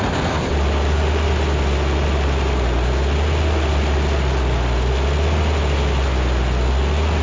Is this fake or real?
real